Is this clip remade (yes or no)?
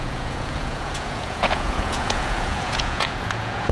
yes